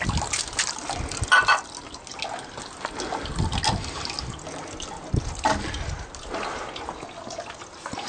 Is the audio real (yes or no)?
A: yes